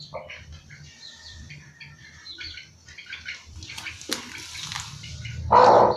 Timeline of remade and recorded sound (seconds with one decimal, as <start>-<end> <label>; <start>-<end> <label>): 0.0-0.5 recorded; 0.5-3.9 remade; 3.9-6.0 recorded